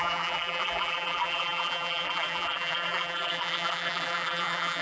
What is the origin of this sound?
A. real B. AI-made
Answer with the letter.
B